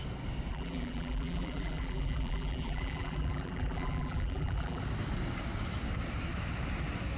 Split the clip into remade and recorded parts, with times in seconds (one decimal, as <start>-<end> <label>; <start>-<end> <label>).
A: 0.0-0.5 recorded; 0.5-4.8 remade; 4.8-7.2 recorded